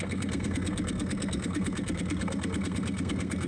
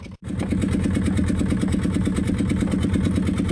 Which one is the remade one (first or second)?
first